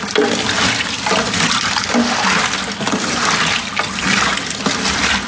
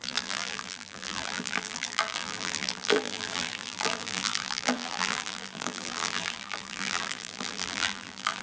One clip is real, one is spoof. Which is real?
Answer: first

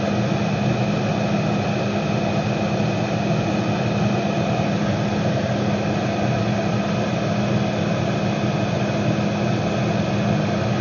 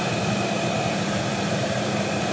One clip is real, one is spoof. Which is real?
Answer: first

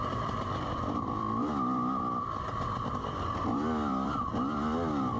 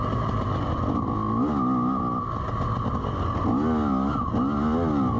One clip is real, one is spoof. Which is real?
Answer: second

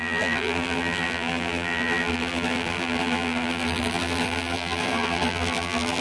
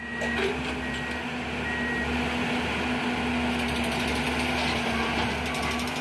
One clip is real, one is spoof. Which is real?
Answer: second